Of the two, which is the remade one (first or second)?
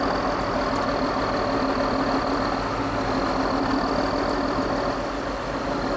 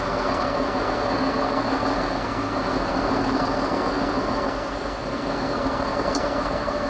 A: second